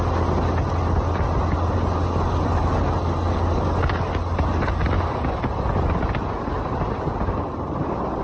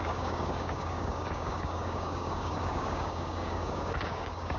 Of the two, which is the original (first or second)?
first